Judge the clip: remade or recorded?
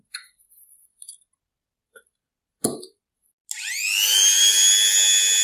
recorded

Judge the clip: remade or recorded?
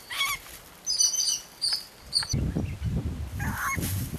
recorded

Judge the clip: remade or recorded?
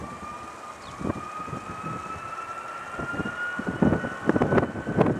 recorded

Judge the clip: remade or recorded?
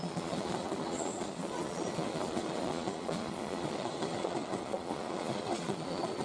remade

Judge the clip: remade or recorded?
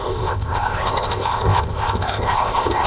remade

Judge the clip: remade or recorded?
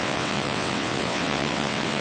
remade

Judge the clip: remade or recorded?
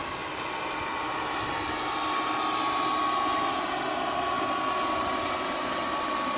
recorded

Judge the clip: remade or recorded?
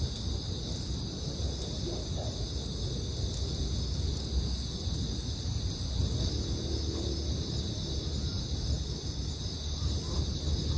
recorded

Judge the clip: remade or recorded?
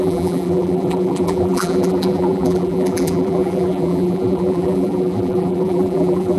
remade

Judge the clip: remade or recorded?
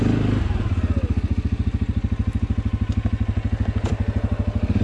recorded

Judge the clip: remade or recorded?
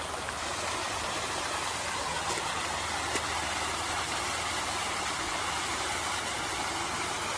recorded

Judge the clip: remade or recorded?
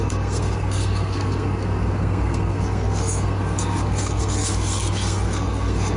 remade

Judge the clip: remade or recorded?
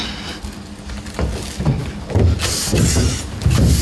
recorded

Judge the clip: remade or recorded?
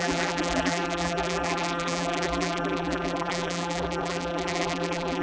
remade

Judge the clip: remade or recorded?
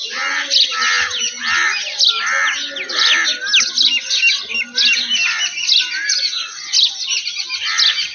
recorded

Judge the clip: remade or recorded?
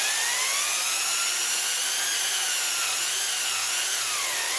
recorded